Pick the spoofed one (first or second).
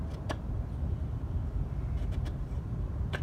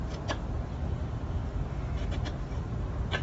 first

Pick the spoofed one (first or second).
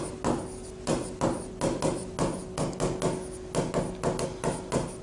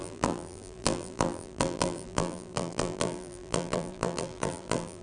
second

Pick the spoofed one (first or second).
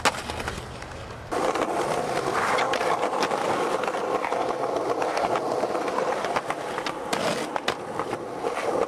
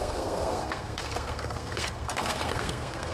second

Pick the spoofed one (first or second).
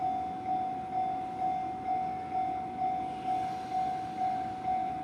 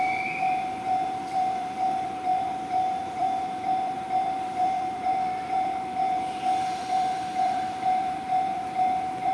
second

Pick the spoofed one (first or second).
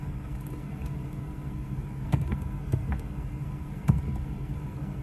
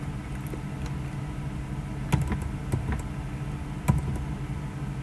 first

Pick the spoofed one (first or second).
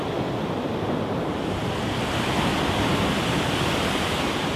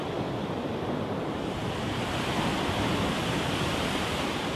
second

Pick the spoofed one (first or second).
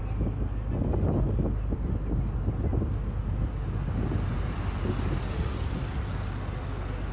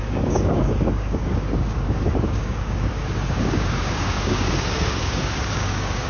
second